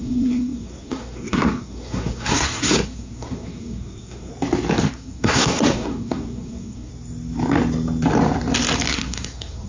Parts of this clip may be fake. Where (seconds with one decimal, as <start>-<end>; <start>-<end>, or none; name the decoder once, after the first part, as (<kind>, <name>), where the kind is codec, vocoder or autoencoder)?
0.0-4.3 (codec, SNAC); 4.9-6.9; 8.9-9.7

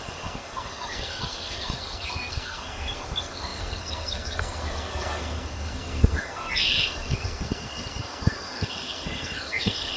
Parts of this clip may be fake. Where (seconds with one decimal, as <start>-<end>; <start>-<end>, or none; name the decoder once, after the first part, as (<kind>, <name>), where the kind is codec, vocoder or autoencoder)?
0.0-10.0 (codec, SNAC)

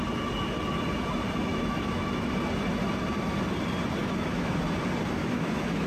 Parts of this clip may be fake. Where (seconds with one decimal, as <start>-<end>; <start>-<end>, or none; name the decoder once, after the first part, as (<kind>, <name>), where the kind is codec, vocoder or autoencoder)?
1.5-2.3 (autoencoder, DAC-VAE); 4.0-4.5; 5.2-5.9

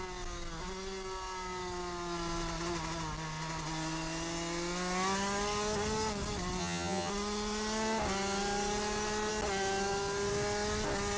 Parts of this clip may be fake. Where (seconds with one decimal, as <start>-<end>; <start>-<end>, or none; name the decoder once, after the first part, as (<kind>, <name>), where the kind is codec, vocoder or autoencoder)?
6.6-7.1 (vocoder, HiFi-GAN)

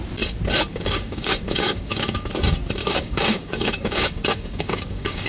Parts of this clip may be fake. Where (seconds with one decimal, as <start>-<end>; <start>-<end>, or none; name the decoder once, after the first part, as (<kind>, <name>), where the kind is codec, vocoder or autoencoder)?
0.7-2.3 (codec, DAC); 2.8-5.3

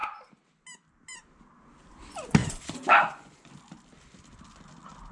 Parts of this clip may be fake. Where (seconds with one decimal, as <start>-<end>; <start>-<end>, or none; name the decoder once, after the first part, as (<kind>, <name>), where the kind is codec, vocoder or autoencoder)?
2.4-3.5 (vocoder, Vocos)